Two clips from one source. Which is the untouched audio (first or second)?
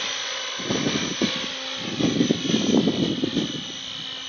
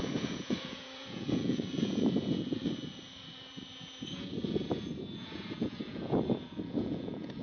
first